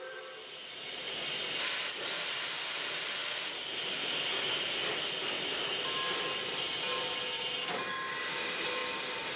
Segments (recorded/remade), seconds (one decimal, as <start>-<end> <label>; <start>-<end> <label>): 0.0-3.2 remade; 3.2-8.3 recorded; 8.3-9.4 remade

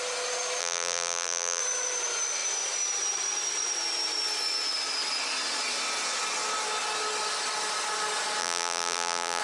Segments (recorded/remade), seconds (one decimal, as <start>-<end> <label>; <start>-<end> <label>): 0.0-0.6 recorded; 0.6-1.6 remade; 1.6-8.4 recorded; 8.4-9.4 remade

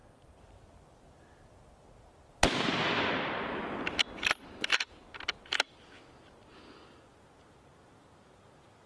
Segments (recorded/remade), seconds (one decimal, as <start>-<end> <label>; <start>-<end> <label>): 0.0-8.9 recorded

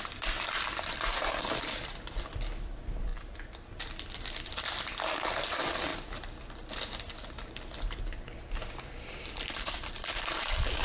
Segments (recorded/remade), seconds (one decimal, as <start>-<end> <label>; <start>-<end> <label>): 0.0-3.1 remade; 3.1-3.7 recorded; 3.7-5.9 remade; 5.9-8.0 recorded; 8.0-10.8 remade

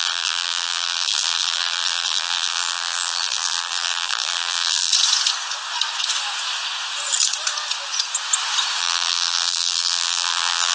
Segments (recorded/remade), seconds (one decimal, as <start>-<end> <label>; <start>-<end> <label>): 0.0-4.9 remade; 4.9-8.8 recorded; 8.8-10.7 remade

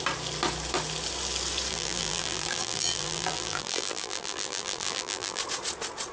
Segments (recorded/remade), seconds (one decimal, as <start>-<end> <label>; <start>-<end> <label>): 0.0-1.7 recorded; 1.7-5.4 remade; 5.4-6.1 recorded

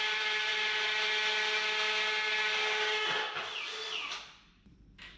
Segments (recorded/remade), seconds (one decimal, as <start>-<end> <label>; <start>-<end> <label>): 0.0-0.5 remade; 0.5-3.6 recorded; 3.6-5.2 remade

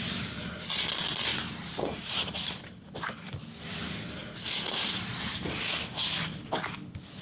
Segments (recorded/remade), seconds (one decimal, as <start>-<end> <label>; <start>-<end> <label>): 0.0-1.3 recorded; 1.3-2.5 remade; 2.5-4.2 recorded; 4.2-5.6 remade; 5.6-7.2 recorded